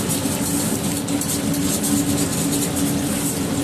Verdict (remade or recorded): recorded